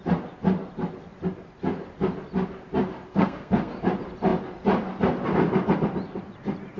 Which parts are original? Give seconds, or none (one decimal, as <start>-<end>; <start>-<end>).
0.0-3.1; 3.7-6.8